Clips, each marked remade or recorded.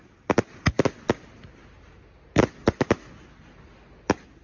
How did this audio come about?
recorded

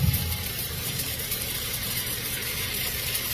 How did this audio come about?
remade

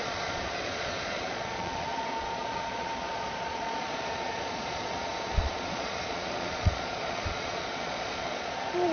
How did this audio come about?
remade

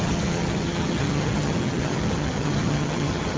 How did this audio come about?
remade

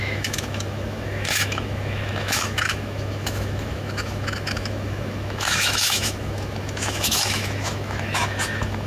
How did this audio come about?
remade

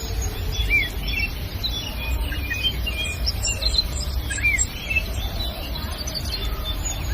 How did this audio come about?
remade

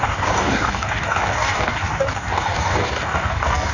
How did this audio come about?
remade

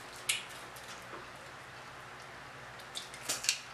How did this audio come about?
recorded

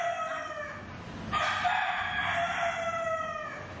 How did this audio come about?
recorded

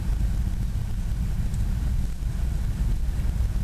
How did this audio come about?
recorded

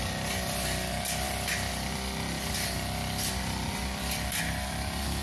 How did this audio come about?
recorded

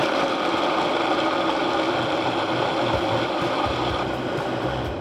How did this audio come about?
recorded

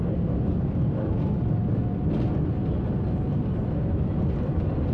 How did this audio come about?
recorded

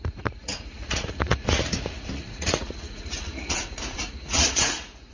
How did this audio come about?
remade